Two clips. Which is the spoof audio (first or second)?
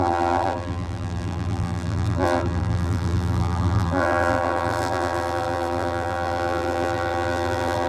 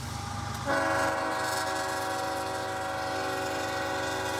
first